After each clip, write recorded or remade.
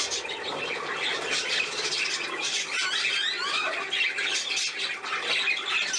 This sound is recorded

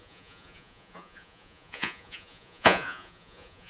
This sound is remade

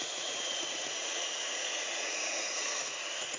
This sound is remade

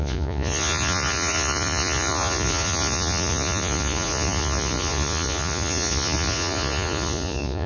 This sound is remade